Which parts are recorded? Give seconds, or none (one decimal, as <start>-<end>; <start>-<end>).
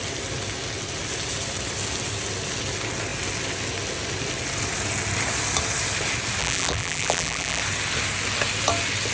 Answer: 0.0-6.4; 7.6-9.1